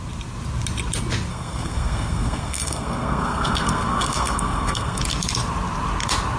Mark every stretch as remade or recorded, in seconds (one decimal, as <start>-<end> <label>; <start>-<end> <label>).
0.0-1.3 recorded; 1.3-5.0 remade; 5.0-6.4 recorded